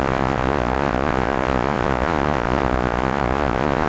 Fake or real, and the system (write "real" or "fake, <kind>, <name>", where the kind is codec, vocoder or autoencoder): fake, vocoder, Vocos